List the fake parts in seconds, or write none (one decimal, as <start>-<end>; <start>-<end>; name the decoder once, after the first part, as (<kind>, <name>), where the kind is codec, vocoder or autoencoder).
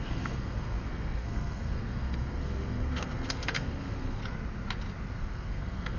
0.0-4.2 (codec, SNAC); 5.2-6.0